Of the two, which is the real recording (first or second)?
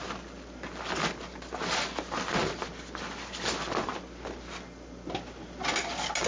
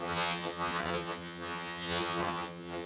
first